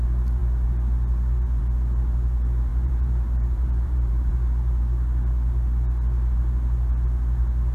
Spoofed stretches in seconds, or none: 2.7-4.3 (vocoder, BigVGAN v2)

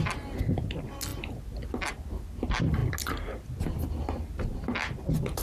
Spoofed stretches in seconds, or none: none

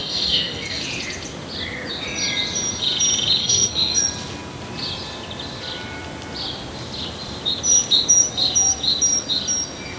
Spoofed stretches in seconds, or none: 0.0-0.8 (codec, SNAC); 3.4-4.0

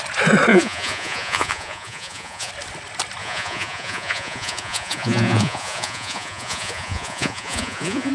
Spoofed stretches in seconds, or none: 0.5-2.5 (vocoder, Vocos); 3.2-8.1

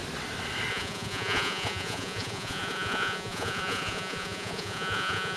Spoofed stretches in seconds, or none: 0.7-5.4 (vocoder, Vocos)

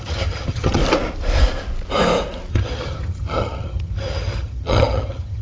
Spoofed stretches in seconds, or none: 0.0-0.8 (vocoder, HiFi-GAN); 2.5-5.4

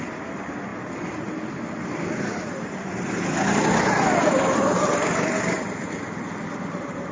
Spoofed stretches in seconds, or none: none

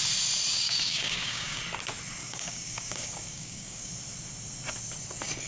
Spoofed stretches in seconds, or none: 0.5-1.6 (codec, DAC); 2.2-3.9